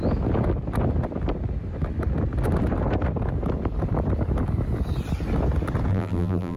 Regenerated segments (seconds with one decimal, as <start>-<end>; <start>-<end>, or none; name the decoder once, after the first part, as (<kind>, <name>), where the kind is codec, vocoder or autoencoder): 5.9-6.6 (vocoder, BigVGAN v2)